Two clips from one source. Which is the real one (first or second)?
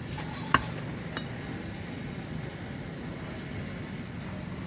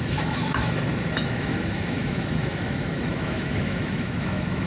first